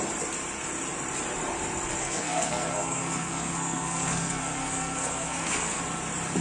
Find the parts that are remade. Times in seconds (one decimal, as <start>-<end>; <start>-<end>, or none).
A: 2.0-5.8